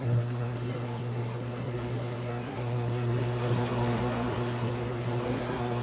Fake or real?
fake